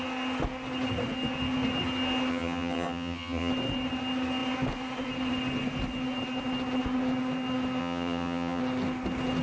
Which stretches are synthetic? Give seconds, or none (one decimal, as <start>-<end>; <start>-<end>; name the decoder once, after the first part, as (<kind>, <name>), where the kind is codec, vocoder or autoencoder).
2.3-3.5 (vocoder, HiFi-GAN); 7.8-8.6